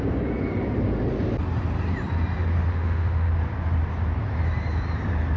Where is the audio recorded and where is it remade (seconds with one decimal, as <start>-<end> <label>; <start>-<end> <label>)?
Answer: 0.0-2.7 recorded; 2.7-3.3 remade; 3.3-5.4 recorded